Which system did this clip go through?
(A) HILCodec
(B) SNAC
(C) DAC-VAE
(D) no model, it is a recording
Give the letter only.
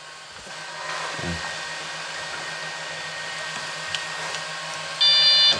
D